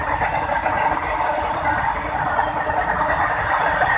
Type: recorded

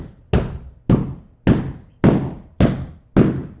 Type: recorded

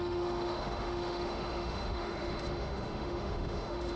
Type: remade